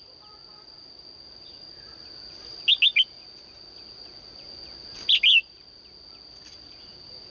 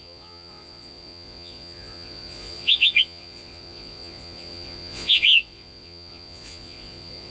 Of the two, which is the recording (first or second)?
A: first